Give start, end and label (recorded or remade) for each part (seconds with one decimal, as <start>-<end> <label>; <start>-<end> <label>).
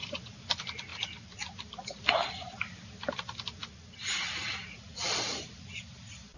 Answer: 0.0-0.9 remade; 0.9-2.3 recorded; 2.3-6.4 remade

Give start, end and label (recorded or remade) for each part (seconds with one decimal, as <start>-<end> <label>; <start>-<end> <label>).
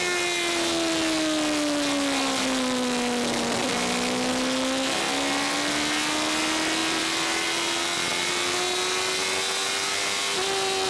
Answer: 0.0-6.8 recorded; 6.8-8.3 remade; 8.3-10.9 recorded